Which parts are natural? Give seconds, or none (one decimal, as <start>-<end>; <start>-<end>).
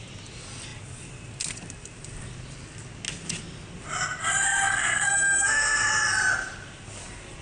0.0-4.7; 5.9-7.4